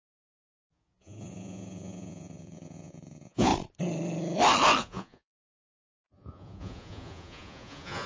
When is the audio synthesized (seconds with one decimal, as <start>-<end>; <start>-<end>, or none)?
0.0-3.5; 4.8-8.1